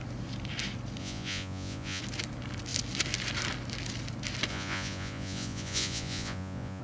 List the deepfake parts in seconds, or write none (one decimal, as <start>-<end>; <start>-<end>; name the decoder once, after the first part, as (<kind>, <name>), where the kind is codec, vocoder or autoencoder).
1.0-2.0 (vocoder, Vocos); 4.5-6.8